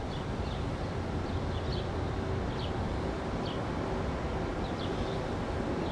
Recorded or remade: recorded